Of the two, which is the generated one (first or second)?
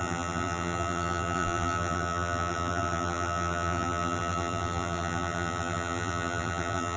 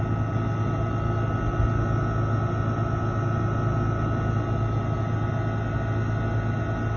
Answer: first